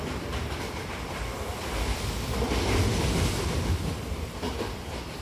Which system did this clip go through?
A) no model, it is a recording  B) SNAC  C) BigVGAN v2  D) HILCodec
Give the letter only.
C